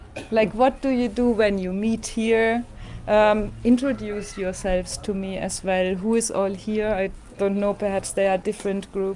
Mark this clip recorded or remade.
recorded